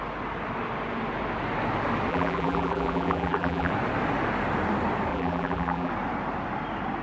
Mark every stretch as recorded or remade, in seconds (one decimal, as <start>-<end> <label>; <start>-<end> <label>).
0.0-2.1 recorded; 2.1-3.7 remade; 3.7-5.1 recorded; 5.1-5.9 remade; 5.9-7.0 recorded